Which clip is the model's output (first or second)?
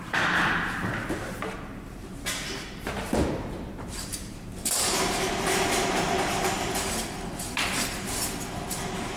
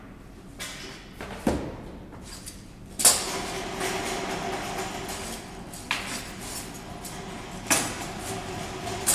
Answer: first